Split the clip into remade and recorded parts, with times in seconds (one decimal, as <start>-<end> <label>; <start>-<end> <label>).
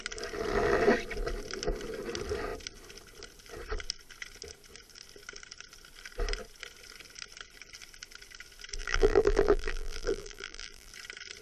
0.0-8.8 recorded; 8.8-10.9 remade; 10.9-11.4 recorded